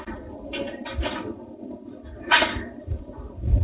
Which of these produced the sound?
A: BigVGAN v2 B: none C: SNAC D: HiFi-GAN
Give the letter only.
B